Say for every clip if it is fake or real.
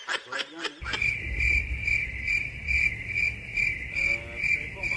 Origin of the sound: real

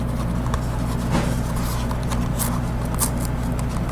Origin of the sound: real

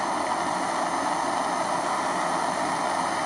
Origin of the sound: real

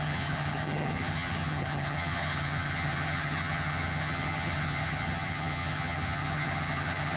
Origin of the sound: fake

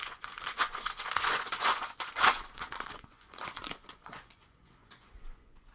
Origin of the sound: fake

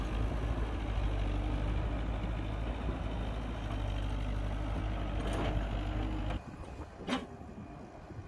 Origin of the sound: real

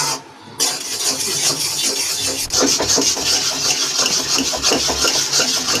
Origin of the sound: real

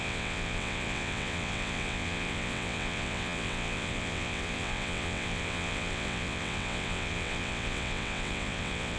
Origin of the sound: fake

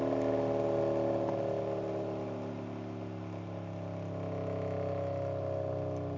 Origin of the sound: real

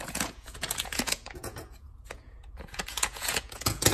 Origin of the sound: fake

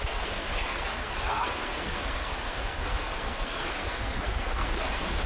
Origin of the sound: fake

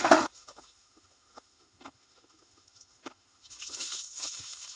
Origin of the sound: fake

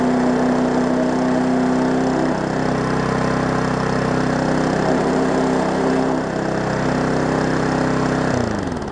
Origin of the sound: real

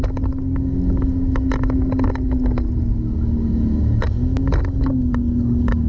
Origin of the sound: real